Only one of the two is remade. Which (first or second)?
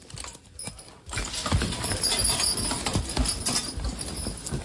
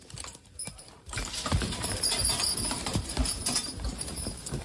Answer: second